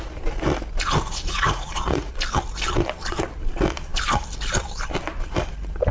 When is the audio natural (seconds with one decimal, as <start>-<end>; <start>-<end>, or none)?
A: 0.0-1.1; 2.1-5.9